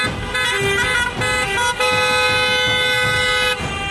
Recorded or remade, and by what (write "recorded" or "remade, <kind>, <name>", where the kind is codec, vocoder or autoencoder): recorded